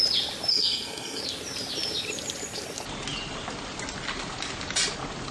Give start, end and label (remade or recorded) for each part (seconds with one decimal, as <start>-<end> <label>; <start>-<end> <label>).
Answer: 0.0-0.5 recorded; 0.5-1.2 remade; 1.2-5.3 recorded

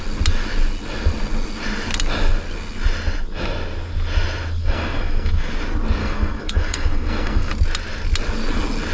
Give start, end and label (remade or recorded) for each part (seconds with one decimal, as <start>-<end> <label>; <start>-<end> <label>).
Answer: 0.0-4.6 recorded; 4.6-5.5 remade; 5.5-6.0 recorded; 6.0-7.5 remade; 7.5-8.9 recorded